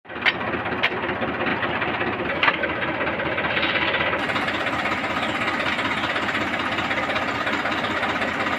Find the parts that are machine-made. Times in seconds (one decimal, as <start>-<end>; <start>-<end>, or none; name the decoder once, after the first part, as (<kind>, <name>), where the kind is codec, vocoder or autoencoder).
1.5-2.6 (vocoder, BigVGAN v2)